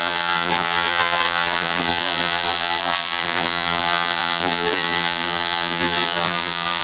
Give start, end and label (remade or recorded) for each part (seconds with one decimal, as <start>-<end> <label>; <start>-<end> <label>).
0.0-6.8 remade